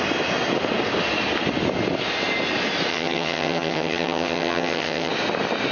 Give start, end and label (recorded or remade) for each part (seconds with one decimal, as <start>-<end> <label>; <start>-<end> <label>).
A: 0.0-2.9 recorded; 2.9-5.1 remade; 5.1-5.7 recorded